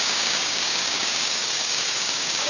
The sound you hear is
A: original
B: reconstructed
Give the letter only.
B